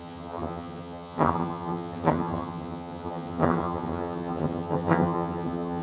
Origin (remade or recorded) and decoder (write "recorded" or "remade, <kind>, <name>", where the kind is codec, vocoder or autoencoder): remade, vocoder, HiFi-GAN